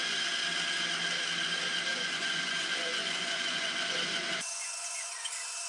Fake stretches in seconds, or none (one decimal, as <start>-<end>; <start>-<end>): 1.9-5.3